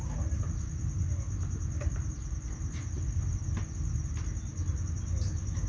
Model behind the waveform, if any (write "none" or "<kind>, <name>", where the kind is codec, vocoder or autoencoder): none